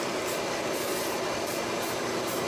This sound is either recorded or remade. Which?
recorded